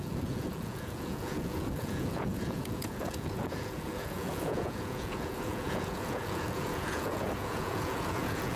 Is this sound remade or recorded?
remade